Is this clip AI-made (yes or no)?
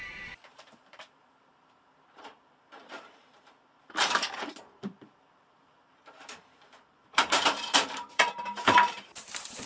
yes